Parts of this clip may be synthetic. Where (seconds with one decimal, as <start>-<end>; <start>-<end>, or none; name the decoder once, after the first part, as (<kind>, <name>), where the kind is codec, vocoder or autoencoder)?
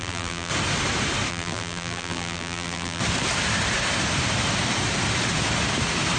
0.0-0.5 (vocoder, BigVGAN v2); 1.3-3.0